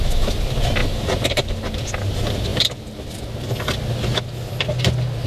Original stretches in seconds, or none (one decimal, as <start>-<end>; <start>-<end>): 0.0-5.3